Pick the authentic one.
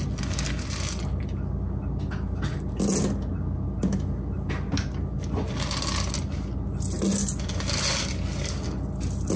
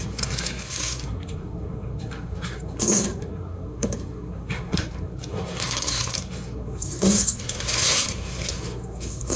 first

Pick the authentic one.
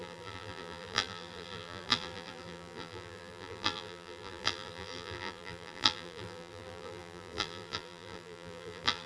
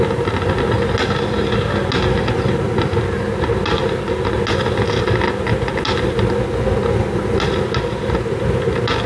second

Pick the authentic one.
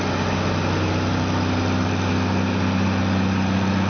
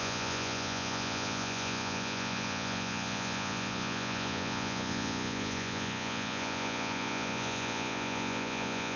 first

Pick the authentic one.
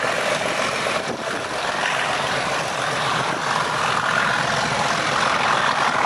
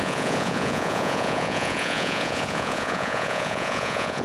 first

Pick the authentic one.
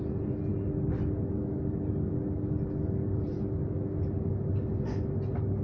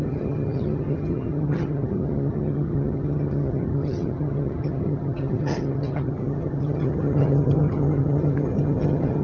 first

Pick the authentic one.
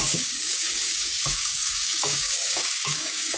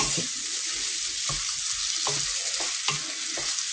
second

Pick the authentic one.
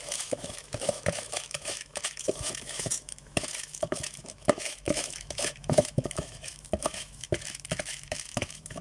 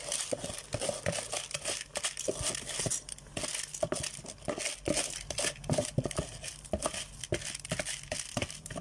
second